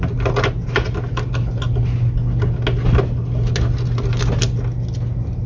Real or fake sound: real